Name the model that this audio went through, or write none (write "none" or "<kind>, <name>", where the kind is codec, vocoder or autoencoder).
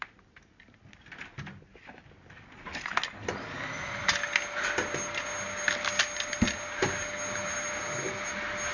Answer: none